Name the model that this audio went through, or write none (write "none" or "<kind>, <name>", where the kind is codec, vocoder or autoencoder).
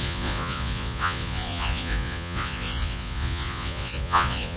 vocoder, Vocos